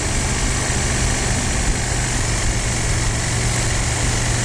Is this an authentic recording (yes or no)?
yes